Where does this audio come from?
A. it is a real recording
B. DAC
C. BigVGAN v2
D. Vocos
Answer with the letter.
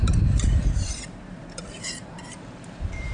C